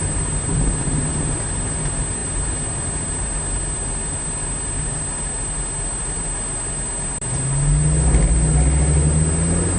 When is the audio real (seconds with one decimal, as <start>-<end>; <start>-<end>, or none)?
0.0-9.8